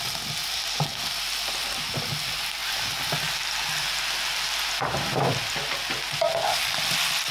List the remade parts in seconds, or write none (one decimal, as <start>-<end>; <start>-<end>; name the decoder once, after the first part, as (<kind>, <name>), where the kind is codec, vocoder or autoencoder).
none